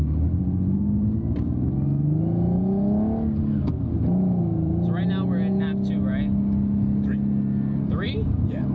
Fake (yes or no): no